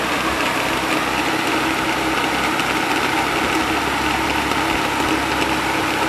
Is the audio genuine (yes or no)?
yes